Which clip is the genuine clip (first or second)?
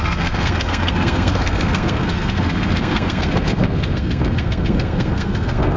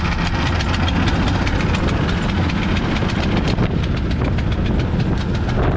second